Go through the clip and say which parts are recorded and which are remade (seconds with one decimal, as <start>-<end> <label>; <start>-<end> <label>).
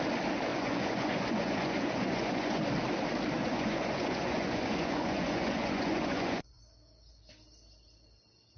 0.0-0.5 recorded; 0.5-2.6 remade; 2.6-3.4 recorded; 3.4-6.6 remade; 6.6-8.6 recorded